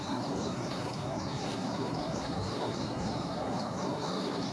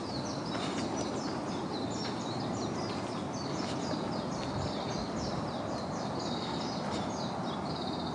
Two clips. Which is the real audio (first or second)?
second